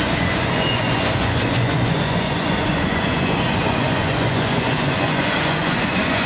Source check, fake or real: fake